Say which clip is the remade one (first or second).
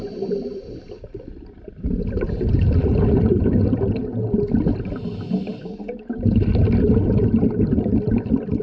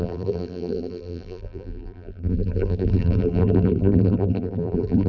second